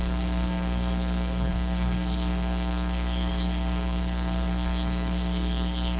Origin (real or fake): fake